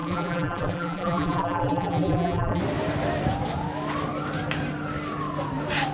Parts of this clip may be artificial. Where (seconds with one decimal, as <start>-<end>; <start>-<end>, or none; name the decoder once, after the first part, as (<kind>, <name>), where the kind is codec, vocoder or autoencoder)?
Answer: 0.0-2.6 (vocoder, BigVGAN v2)